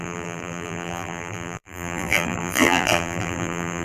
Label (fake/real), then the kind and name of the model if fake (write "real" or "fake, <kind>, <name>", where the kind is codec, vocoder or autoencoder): fake, vocoder, BigVGAN v2